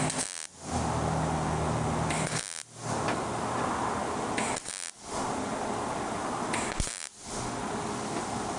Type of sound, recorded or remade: recorded